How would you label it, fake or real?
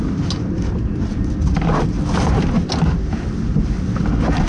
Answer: real